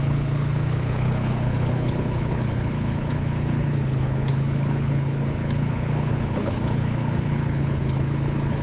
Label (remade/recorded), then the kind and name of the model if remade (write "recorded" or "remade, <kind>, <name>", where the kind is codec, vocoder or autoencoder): remade, codec, HILCodec